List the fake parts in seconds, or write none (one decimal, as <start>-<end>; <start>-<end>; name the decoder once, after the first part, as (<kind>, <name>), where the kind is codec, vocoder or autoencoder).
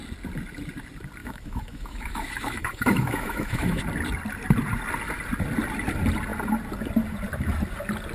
1.2-3.8 (autoencoder, DAC-VAE)